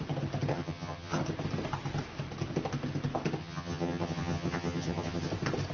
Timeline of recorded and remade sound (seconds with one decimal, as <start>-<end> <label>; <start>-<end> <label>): 0.0-0.5 recorded; 0.5-1.2 remade; 1.2-3.4 recorded; 3.4-5.3 remade; 5.3-5.7 recorded